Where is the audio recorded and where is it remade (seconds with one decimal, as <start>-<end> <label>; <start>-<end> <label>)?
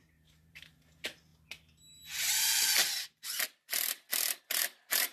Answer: 0.0-1.3 remade; 1.3-4.4 recorded; 4.4-5.1 remade